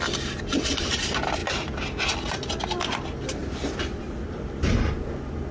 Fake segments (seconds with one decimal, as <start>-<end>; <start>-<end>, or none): 3.4-4.9